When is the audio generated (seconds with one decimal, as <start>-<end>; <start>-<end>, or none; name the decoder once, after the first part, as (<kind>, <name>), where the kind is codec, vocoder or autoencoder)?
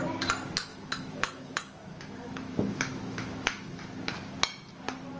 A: 0.7-3.8 (autoencoder, DAC-VAE)